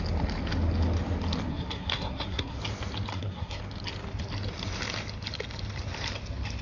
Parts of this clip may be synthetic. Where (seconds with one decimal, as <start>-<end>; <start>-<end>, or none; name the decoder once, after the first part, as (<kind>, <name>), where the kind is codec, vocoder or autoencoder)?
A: 1.5-2.6 (codec, SNAC); 3.1-3.6